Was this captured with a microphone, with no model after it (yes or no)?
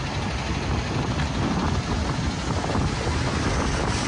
yes